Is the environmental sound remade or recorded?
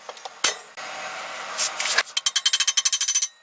recorded